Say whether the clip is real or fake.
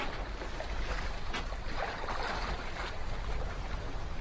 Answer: real